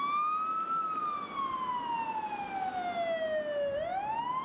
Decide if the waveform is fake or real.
real